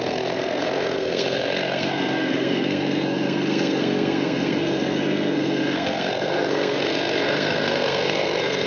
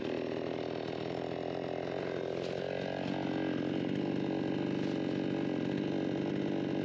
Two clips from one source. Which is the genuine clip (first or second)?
second